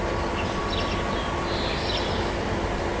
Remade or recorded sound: recorded